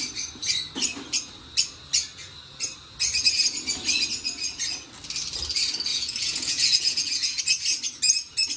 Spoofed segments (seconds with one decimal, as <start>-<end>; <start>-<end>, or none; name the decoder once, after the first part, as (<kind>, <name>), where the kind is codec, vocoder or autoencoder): 5.9-7.4 (vocoder, Vocos)